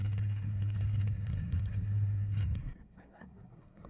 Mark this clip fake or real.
fake